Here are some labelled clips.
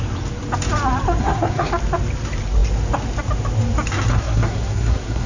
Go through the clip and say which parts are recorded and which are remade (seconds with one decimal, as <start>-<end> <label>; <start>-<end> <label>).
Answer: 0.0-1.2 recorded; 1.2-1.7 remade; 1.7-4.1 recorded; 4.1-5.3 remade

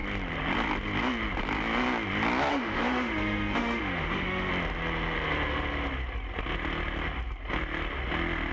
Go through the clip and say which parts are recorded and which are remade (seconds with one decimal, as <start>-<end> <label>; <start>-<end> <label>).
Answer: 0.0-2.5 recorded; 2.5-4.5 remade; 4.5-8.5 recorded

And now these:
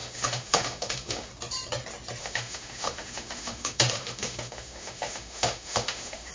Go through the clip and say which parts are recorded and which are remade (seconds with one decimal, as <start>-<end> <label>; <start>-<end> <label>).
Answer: 0.0-1.3 remade; 1.3-2.2 recorded; 2.2-6.3 remade

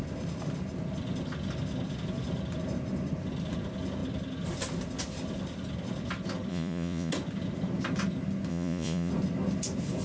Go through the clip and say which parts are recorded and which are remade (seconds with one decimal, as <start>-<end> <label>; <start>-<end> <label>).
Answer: 0.0-6.5 recorded; 6.5-7.1 remade; 7.1-8.5 recorded; 8.5-9.1 remade; 9.1-10.0 recorded

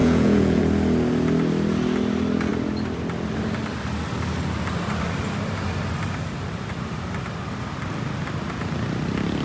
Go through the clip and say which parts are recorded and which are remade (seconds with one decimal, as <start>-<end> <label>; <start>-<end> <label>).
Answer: 0.0-0.6 remade; 0.6-9.4 recorded